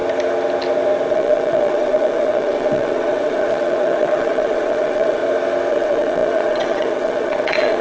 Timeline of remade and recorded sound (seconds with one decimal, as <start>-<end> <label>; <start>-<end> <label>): 0.0-1.1 recorded; 1.1-5.2 remade; 5.2-5.7 recorded; 5.7-7.8 remade